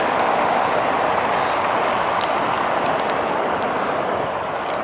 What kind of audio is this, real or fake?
real